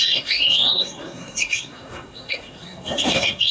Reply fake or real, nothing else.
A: fake